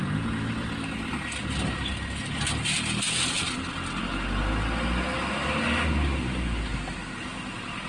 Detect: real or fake real